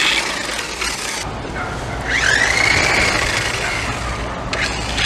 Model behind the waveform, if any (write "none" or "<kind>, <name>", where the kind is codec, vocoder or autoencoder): none